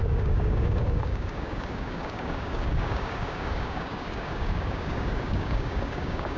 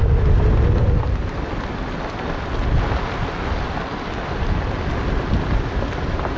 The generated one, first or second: first